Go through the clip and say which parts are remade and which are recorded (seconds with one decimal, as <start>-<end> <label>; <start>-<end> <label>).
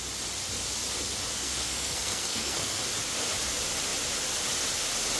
0.0-1.4 recorded; 1.4-2.8 remade; 2.8-5.2 recorded